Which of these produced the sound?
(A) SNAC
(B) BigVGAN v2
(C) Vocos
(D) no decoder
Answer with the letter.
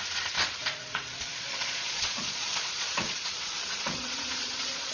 C